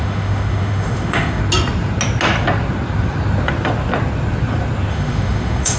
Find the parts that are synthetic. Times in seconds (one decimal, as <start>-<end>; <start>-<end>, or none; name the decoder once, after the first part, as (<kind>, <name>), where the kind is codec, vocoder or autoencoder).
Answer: 0.0-1.4 (autoencoder, DAC-VAE); 4.9-5.8